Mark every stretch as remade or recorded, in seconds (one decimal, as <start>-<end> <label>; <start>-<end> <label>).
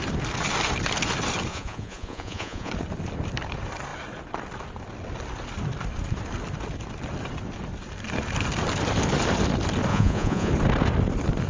0.0-1.5 recorded; 1.5-2.7 remade; 2.7-9.9 recorded; 9.9-10.5 remade; 10.5-11.5 recorded